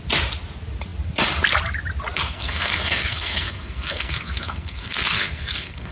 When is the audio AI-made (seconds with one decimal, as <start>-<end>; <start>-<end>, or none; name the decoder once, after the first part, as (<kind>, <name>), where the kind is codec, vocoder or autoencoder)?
2.1-5.9 (codec, SNAC)